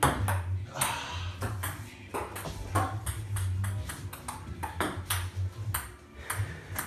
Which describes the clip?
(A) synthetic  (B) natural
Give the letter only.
B